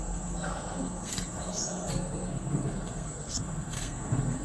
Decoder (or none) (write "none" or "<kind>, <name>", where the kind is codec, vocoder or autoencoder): codec, SNAC